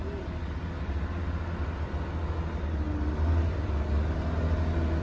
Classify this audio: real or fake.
real